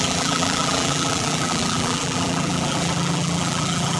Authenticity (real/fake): fake